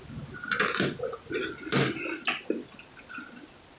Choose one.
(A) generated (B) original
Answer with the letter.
B